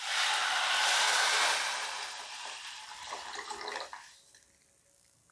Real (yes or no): yes